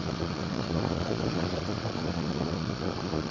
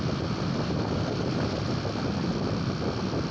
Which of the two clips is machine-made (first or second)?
first